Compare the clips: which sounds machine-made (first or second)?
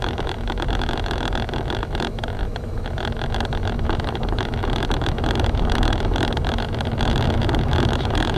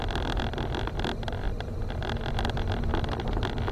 first